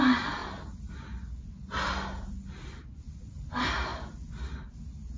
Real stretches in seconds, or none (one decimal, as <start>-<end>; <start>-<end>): 0.0-5.2